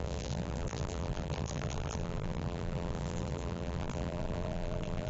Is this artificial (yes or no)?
yes